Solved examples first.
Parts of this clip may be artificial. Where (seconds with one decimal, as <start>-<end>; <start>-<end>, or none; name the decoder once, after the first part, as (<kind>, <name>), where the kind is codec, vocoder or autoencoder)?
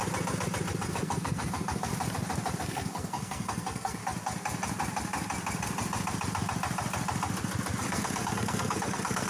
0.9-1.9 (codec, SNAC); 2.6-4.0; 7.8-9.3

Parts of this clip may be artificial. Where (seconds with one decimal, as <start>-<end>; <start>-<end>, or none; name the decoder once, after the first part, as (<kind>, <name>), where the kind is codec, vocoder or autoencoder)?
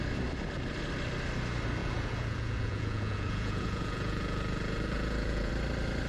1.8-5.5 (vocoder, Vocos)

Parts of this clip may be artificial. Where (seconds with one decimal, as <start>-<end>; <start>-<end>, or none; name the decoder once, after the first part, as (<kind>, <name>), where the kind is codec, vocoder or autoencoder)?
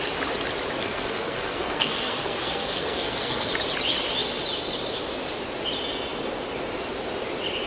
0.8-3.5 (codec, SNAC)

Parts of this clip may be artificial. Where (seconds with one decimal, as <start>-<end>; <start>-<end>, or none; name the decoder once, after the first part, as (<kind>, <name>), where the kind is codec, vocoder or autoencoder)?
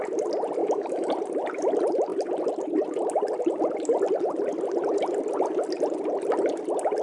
0.6-1.1 (autoencoder, DAC-VAE)